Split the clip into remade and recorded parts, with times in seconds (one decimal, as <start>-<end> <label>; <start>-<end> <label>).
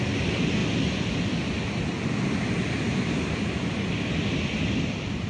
0.0-5.3 recorded